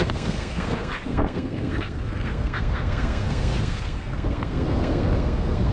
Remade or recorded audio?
remade